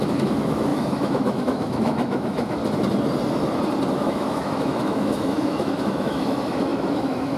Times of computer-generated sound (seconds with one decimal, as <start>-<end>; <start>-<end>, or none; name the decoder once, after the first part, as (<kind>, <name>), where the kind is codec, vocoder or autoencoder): 0.0-2.6 (autoencoder, DAC-VAE); 3.9-7.4